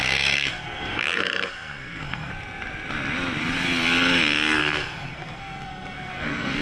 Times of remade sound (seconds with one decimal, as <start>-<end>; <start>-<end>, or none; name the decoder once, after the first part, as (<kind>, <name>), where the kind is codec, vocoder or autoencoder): 0.0-2.3 (codec, SNAC); 4.6-6.6